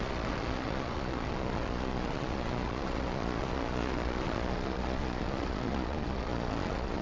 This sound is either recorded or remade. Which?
remade